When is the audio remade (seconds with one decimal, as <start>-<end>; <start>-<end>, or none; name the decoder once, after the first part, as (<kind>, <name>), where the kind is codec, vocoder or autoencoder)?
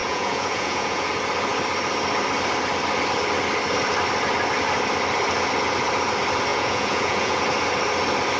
0.0-1.1 (vocoder, Vocos); 6.5-7.4